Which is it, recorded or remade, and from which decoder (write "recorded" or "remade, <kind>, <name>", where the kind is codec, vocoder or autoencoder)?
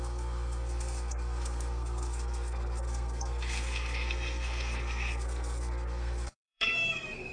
remade, codec, SNAC